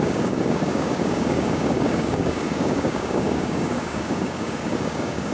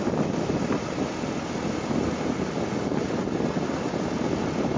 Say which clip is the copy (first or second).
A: first